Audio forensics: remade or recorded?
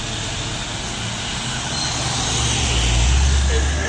recorded